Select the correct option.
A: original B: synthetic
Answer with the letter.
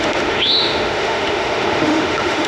B